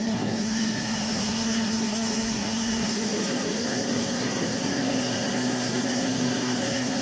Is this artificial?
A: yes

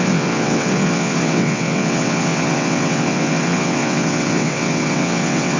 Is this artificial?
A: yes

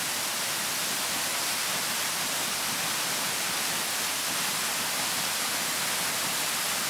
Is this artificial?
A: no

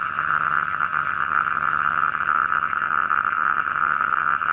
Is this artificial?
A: yes